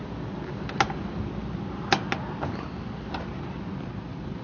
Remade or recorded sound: recorded